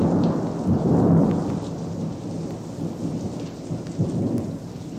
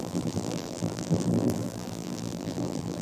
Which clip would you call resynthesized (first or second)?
second